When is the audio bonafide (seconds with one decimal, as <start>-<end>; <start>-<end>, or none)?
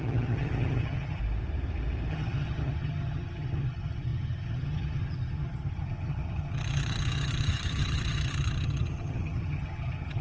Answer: 1.2-2.1